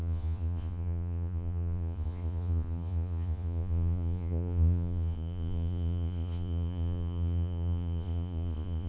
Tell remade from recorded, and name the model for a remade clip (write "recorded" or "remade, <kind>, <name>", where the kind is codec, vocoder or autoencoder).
remade, vocoder, Vocos